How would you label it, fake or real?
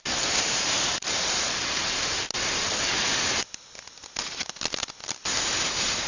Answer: real